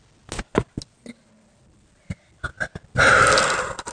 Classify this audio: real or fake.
real